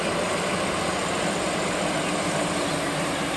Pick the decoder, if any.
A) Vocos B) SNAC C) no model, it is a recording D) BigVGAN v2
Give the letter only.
C